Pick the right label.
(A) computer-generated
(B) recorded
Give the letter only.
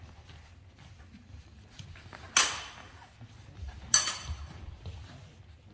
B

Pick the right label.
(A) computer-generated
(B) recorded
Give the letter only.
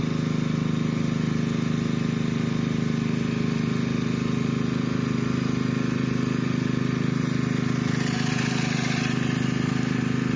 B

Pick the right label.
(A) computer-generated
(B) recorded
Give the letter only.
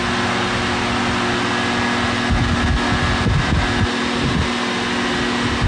B